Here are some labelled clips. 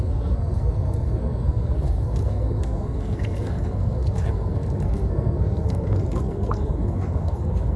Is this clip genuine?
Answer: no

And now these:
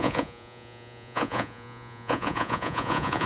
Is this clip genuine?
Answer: no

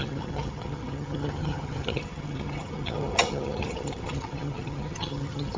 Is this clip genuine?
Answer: no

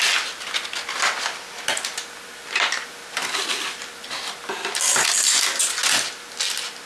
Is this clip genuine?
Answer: yes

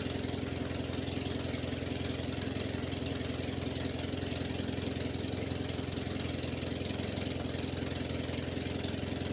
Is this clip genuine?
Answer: yes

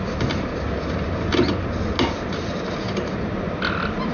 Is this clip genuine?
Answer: yes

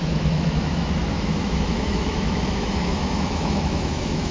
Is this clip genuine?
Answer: no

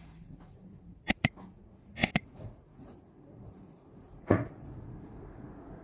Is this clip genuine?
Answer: no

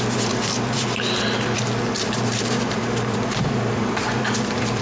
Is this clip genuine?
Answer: no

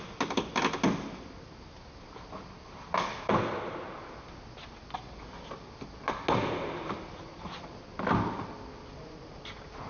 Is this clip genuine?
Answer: yes